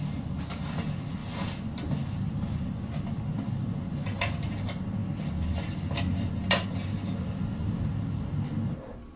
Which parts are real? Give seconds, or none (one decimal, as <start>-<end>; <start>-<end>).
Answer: 0.0-9.2